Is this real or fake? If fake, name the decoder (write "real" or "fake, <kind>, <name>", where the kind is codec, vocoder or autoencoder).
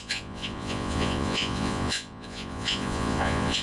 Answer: fake, vocoder, Vocos